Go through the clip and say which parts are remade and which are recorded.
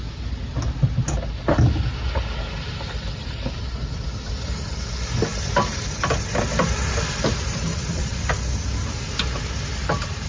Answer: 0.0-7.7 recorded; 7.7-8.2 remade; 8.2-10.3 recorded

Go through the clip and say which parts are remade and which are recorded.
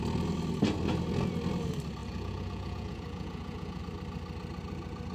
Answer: 0.0-2.0 recorded; 2.0-3.8 remade; 3.8-5.1 recorded